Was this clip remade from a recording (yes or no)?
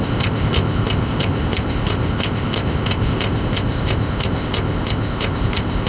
yes